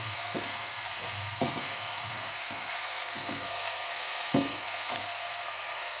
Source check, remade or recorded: remade